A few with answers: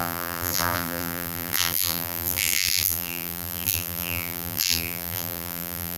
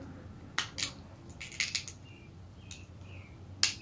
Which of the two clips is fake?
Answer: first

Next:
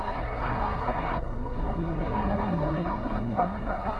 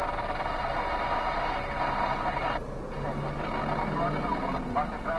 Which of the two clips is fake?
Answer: first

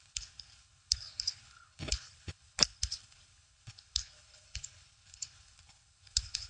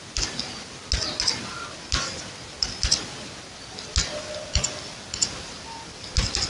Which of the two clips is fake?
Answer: first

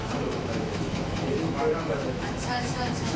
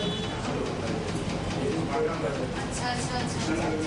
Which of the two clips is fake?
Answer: first